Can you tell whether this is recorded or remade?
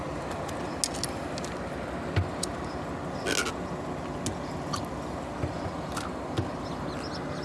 recorded